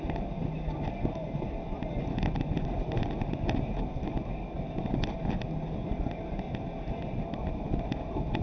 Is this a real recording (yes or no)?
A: yes